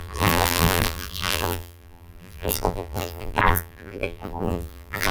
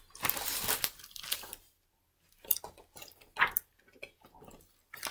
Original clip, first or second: second